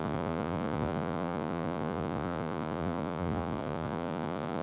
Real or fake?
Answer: fake